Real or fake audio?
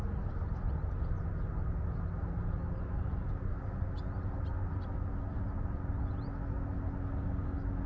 real